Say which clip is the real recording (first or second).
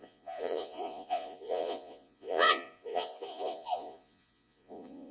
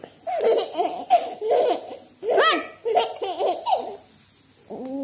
second